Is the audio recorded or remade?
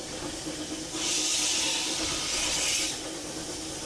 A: recorded